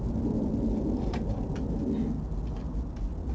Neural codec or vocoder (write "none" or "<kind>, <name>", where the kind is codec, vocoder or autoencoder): none